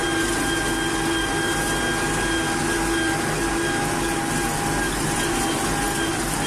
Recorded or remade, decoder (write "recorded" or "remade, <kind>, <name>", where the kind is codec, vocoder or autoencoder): recorded